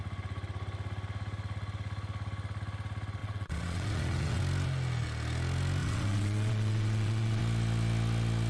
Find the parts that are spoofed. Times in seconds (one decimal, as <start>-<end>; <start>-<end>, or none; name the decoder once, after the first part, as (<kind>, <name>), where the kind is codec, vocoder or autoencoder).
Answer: 3.2-4.4 (vocoder, WaveNeXt); 5.8-7.4